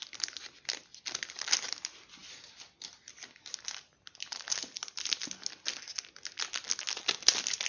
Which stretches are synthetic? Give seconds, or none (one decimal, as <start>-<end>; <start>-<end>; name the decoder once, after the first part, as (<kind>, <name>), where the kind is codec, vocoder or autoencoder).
none